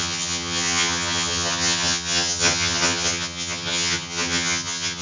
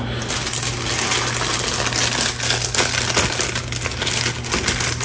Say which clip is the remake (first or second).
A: first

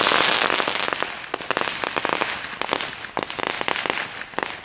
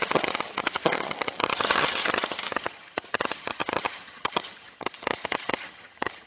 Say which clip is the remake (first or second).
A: second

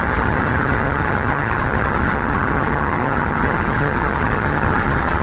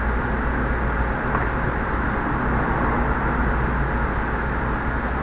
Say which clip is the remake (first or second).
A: first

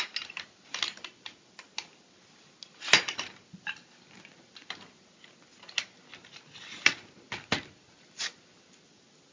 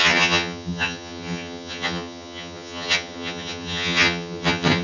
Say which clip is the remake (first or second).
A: second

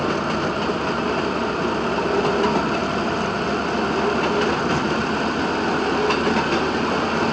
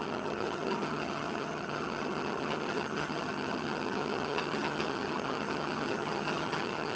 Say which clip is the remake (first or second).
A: second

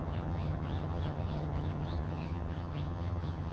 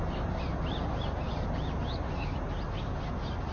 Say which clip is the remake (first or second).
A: first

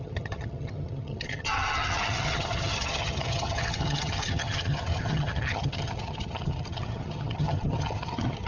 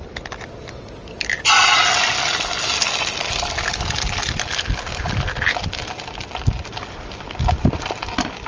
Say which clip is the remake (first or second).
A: first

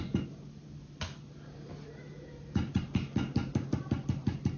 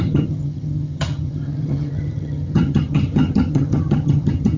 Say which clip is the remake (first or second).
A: second